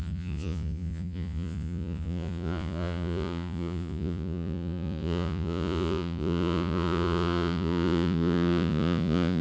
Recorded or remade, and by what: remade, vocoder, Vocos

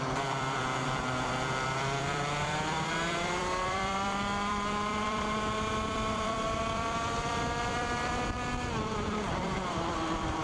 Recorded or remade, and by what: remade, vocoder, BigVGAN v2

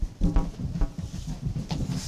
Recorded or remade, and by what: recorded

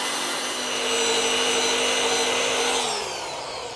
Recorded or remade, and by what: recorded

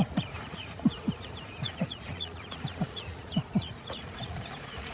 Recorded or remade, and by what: remade, vocoder, Vocos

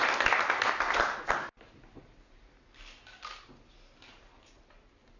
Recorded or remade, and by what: recorded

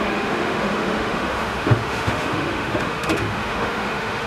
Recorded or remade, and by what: remade, autoencoder, DAC-VAE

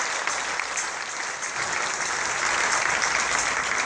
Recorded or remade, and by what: recorded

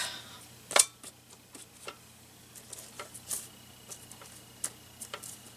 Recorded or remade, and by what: recorded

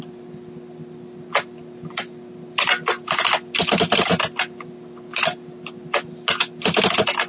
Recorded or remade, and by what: recorded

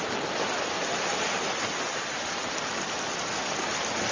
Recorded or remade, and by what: recorded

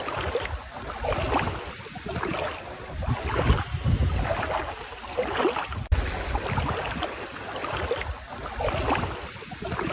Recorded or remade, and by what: recorded